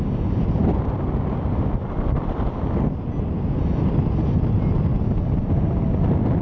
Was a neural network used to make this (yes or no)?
no